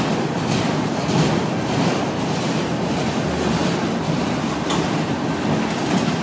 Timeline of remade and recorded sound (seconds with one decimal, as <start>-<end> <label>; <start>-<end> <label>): 0.0-3.6 recorded; 3.6-5.3 remade; 5.3-6.2 recorded